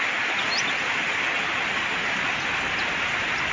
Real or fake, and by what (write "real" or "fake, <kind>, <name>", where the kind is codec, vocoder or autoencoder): real